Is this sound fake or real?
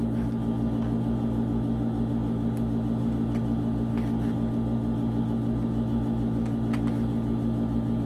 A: real